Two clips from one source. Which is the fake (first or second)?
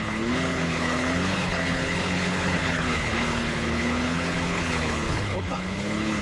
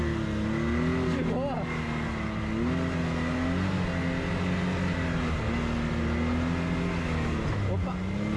first